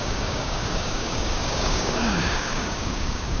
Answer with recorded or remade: remade